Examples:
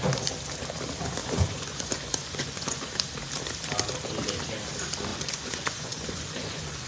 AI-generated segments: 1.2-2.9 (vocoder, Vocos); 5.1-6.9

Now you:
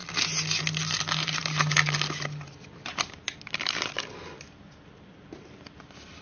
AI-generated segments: 0.6-6.2 (vocoder, BigVGAN v2)